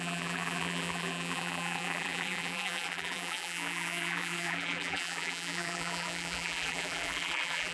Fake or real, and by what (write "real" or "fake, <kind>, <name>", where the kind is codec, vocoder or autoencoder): fake, vocoder, BigVGAN v2